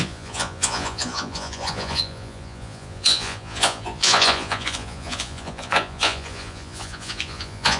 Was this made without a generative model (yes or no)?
no